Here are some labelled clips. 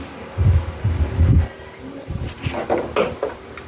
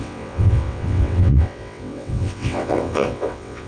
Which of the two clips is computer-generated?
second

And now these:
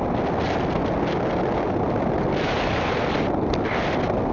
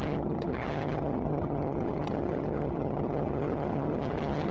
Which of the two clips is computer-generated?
second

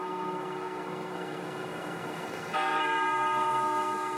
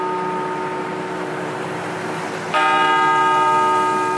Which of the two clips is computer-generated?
first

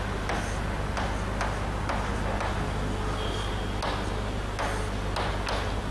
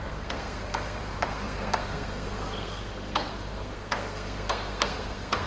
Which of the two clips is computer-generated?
second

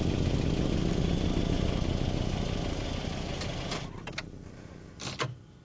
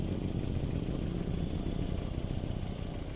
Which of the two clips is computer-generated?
second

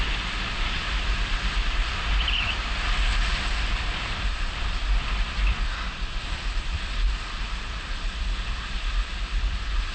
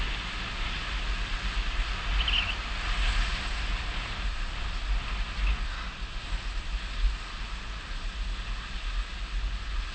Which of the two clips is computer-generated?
first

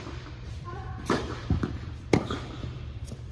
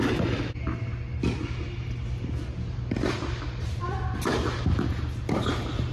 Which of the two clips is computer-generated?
first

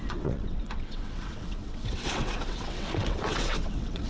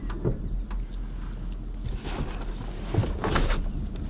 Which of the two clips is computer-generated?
first